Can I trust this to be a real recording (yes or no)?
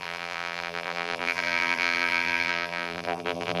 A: no